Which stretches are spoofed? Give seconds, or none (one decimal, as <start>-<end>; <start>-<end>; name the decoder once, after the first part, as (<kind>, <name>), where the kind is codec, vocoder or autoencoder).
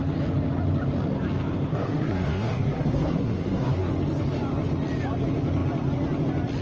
1.7-3.9 (codec, SNAC)